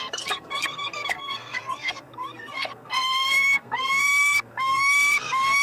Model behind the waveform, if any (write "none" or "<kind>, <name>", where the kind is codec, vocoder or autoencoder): codec, SNAC